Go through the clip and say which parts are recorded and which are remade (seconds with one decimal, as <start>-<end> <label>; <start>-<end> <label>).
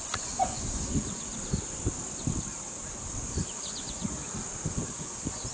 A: 0.0-1.3 remade; 1.3-3.2 recorded; 3.2-4.2 remade; 4.2-4.7 recorded; 4.7-5.5 remade